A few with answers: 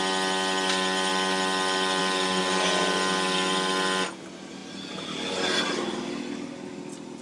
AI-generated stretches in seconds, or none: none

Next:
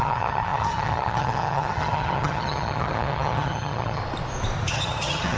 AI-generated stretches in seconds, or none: 0.0-4.0 (vocoder, HiFi-GAN); 4.7-5.4